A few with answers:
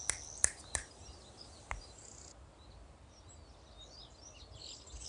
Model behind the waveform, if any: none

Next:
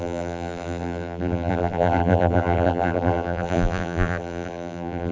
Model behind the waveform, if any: vocoder, BigVGAN v2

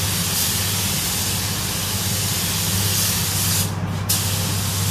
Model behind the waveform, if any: none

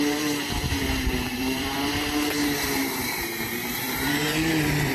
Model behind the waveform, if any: vocoder, BigVGAN v2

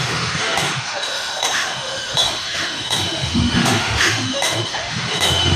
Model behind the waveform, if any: autoencoder, DAC-VAE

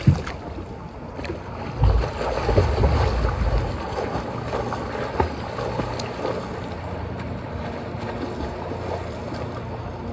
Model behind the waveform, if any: none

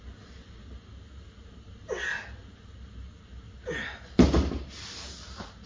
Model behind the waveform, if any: none